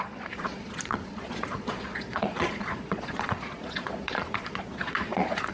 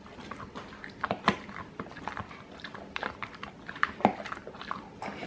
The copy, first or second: first